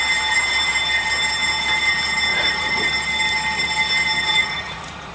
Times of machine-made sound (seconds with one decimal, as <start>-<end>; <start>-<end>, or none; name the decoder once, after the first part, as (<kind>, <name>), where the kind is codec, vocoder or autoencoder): 2.3-2.9 (vocoder, Vocos); 4.3-5.1